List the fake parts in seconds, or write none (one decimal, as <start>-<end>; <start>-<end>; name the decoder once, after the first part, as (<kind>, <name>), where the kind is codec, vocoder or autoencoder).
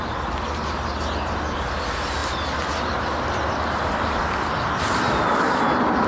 none